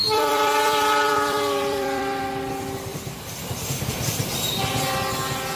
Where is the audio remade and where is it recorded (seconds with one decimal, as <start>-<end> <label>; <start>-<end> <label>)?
0.0-2.2 remade; 2.2-5.6 recorded